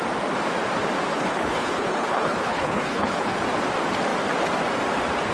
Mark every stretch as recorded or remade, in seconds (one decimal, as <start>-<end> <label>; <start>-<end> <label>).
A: 0.0-1.1 recorded; 1.1-3.4 remade; 3.4-5.3 recorded